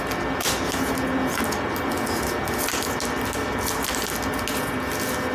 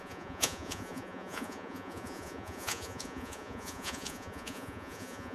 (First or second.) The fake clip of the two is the second